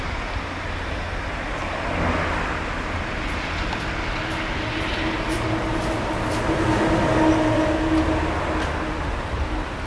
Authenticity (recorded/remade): recorded